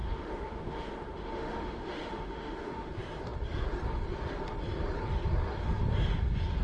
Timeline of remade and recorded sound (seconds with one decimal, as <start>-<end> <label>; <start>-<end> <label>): 0.0-2.9 remade; 2.9-6.6 recorded